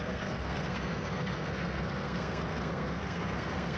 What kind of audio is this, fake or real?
fake